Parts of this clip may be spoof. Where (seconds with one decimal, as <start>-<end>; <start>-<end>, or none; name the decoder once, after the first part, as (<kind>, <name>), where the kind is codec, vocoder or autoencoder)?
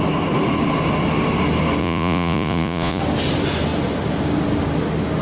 1.8-3.0 (vocoder, Vocos)